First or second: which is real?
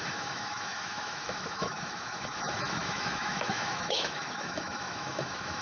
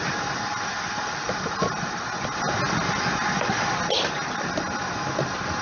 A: second